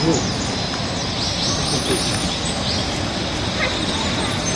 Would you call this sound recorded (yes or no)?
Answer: yes